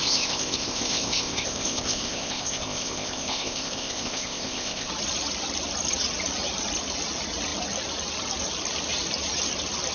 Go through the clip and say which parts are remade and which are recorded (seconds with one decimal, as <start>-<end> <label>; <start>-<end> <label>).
0.0-4.9 remade; 4.9-9.9 recorded